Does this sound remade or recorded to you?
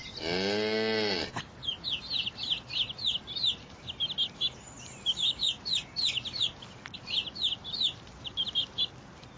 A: recorded